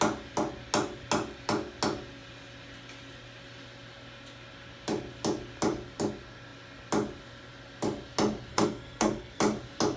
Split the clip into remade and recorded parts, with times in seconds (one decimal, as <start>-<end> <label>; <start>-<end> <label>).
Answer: 0.0-8.5 recorded; 8.5-9.4 remade; 9.4-10.0 recorded